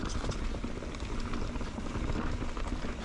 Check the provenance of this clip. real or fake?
real